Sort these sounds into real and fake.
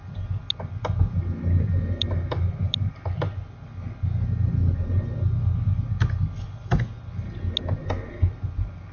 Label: real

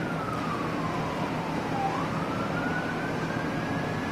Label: real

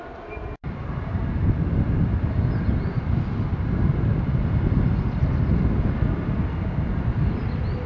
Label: real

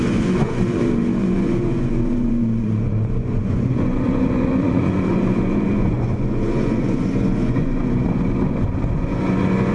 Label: fake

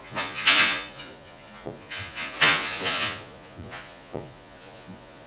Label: fake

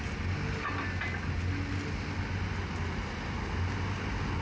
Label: real